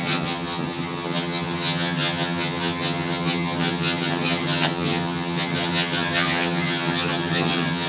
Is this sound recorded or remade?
remade